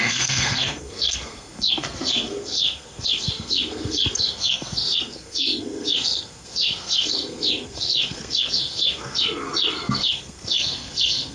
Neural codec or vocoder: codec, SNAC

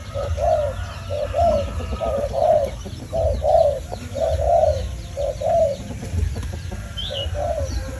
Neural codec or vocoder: none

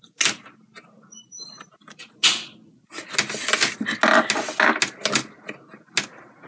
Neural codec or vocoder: none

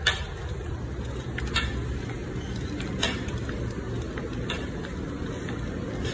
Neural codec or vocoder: none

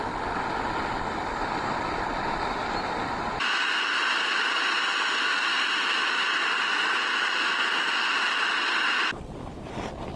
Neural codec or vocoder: none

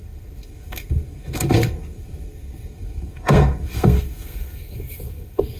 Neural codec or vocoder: codec, SNAC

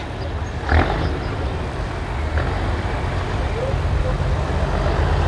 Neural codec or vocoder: none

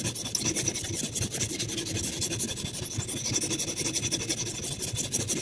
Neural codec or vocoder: none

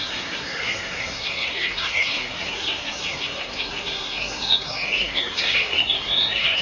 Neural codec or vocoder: codec, SNAC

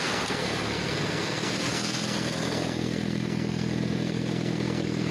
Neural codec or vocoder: codec, SNAC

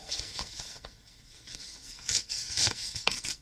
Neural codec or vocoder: codec, SNAC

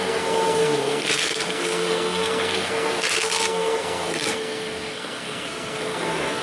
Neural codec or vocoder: codec, SNAC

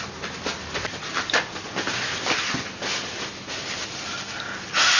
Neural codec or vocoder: none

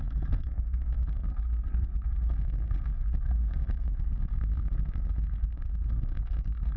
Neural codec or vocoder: codec, SNAC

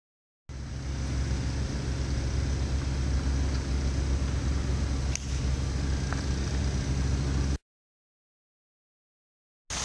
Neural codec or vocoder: none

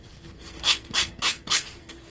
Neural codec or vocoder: codec, SNAC